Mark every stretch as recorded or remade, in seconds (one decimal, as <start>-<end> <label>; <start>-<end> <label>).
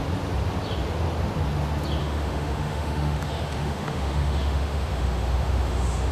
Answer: 0.0-2.0 recorded; 2.0-6.1 remade